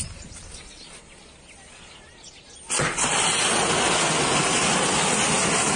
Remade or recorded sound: recorded